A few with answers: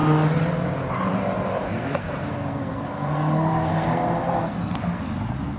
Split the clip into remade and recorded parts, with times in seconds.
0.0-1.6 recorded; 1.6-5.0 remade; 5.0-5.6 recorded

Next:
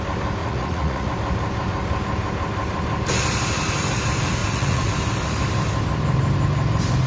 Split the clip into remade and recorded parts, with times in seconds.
0.0-0.4 recorded; 0.4-1.1 remade; 1.1-4.4 recorded; 4.4-4.9 remade; 4.9-7.1 recorded

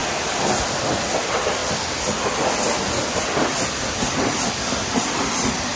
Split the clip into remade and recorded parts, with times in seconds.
0.0-5.8 recorded

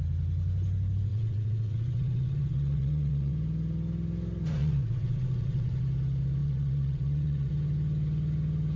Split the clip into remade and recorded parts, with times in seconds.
0.0-1.1 recorded; 1.1-3.3 remade; 3.3-4.6 recorded; 4.6-5.8 remade; 5.8-6.4 recorded; 6.4-7.5 remade; 7.5-8.8 recorded